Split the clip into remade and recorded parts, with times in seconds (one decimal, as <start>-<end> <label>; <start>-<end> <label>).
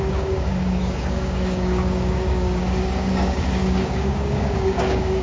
0.0-5.2 remade